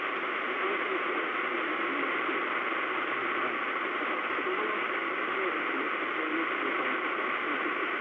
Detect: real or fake real